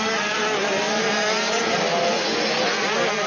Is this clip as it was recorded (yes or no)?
yes